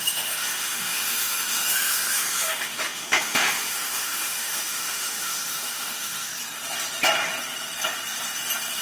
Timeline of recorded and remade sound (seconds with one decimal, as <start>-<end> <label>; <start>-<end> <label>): 0.0-6.3 remade; 6.3-8.8 recorded